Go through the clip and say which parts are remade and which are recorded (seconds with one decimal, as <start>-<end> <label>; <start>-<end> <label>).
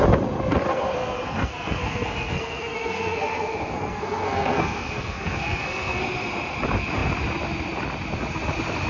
0.0-0.7 recorded; 0.7-6.0 remade; 6.0-8.9 recorded